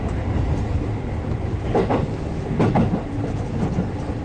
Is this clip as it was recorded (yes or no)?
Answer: yes